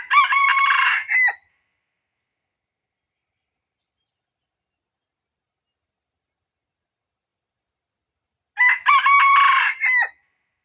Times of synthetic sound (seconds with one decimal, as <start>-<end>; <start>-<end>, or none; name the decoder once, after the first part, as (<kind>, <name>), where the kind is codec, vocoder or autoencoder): 0.5-4.6 (vocoder, BigVGAN v2)